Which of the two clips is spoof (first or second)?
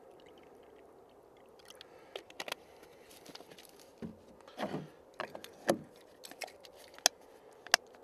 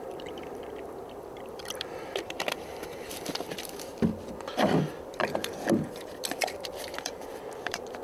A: second